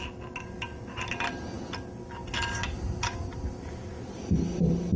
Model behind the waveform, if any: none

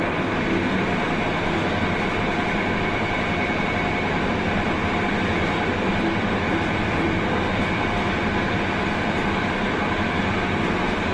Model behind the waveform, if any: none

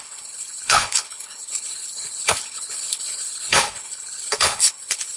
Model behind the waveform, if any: codec, HILCodec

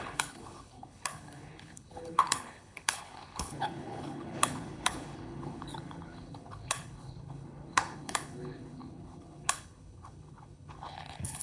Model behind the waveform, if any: codec, HILCodec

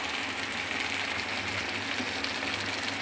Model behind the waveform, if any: none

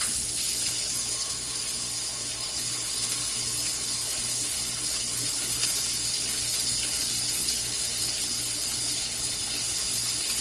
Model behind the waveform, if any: codec, HILCodec